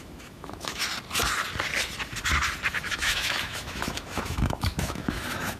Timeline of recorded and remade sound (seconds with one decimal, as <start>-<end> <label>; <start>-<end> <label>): 0.0-0.8 remade; 0.8-2.9 recorded; 2.9-5.6 remade